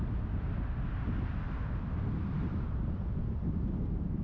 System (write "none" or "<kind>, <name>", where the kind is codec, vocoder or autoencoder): none